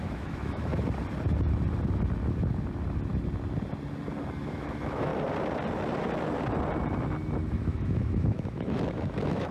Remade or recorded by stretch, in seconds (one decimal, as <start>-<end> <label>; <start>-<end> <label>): 0.0-0.7 remade; 0.7-4.4 recorded; 4.4-5.1 remade; 5.1-7.5 recorded; 7.5-9.5 remade

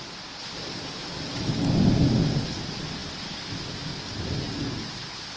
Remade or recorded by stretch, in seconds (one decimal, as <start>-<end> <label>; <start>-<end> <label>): 0.0-1.0 recorded; 1.0-1.7 remade; 1.7-5.4 recorded

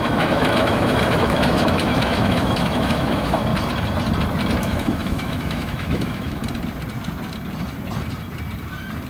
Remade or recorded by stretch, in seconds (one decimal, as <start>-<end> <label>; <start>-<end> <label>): 0.0-3.5 remade; 3.5-4.6 recorded; 4.6-6.4 remade; 6.4-9.1 recorded